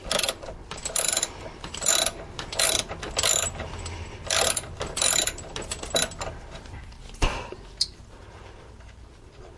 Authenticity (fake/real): real